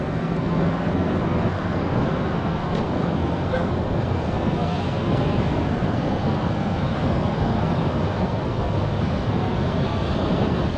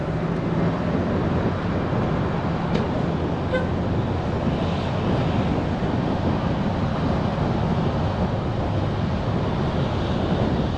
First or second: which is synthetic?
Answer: first